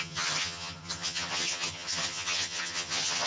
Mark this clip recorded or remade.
remade